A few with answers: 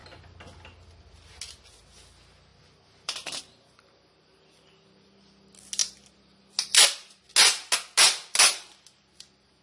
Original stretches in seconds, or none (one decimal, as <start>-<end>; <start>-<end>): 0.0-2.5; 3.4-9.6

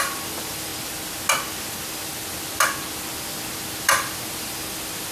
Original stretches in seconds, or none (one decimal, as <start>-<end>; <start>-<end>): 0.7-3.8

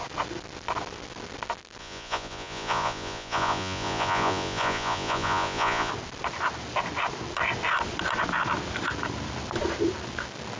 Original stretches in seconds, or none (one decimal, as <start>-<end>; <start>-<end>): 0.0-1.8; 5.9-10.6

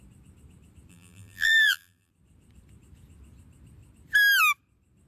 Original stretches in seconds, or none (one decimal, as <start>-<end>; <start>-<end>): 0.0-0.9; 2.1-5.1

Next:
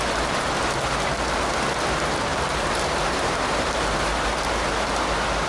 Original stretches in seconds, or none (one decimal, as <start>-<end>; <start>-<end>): 0.0-2.3; 4.7-5.5

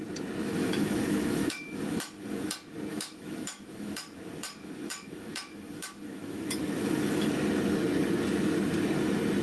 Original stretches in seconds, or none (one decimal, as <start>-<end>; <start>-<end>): 0.0-0.4; 2.5-2.9; 7.3-9.4

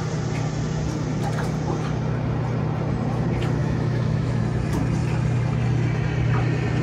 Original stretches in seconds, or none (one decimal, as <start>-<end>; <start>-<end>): 0.0-3.6; 4.4-6.8

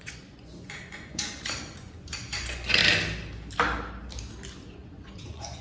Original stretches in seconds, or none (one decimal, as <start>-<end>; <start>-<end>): 2.8-4.7